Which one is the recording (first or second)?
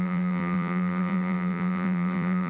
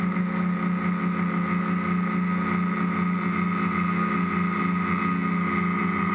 second